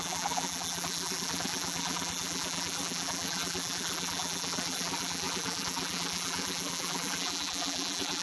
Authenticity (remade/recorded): remade